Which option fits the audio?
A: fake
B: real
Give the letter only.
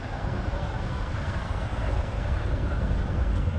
A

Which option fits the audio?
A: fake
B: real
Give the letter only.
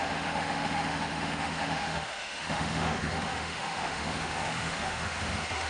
A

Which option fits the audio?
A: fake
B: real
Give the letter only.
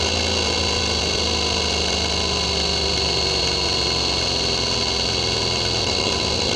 B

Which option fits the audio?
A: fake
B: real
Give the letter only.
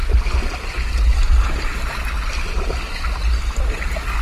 B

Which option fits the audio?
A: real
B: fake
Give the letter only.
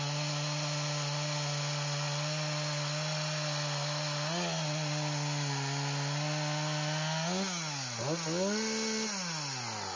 A